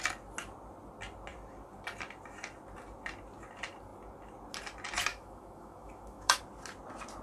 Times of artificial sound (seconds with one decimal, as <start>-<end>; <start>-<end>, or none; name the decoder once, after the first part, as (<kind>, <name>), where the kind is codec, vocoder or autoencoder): 5.1-6.4 (autoencoder, DAC-VAE)